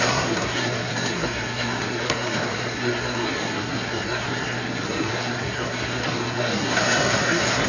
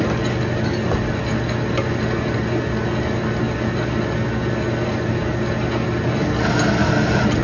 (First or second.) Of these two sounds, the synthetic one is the first